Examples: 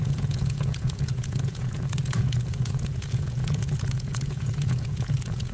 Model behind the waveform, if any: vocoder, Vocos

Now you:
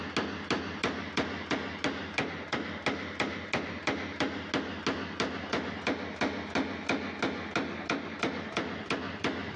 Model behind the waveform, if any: none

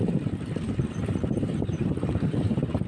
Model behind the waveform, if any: vocoder, BigVGAN v2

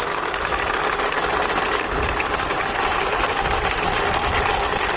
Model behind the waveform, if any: none